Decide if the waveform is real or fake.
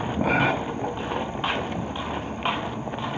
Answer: real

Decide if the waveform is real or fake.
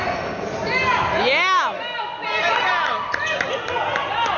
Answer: real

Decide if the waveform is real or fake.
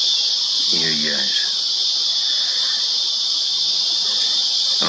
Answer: real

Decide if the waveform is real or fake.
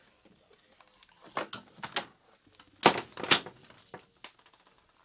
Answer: real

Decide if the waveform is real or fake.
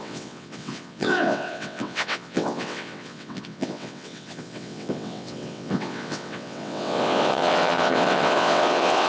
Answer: fake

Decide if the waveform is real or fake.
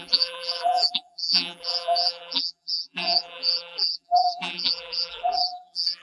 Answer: fake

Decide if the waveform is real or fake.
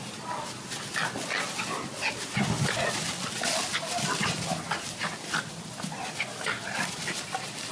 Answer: real